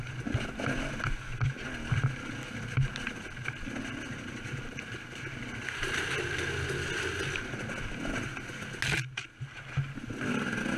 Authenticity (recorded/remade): recorded